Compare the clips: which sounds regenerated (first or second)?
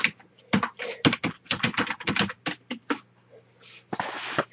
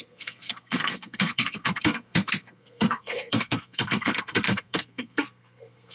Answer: second